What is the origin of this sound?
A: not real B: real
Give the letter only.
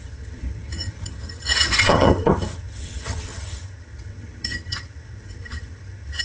A